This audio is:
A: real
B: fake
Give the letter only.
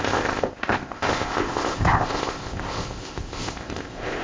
B